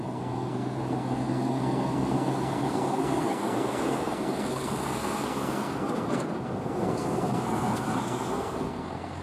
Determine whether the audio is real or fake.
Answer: fake